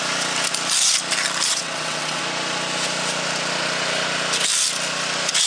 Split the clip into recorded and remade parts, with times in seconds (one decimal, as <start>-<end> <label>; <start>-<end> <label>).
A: 0.0-1.5 recorded; 1.5-2.2 remade; 2.2-5.5 recorded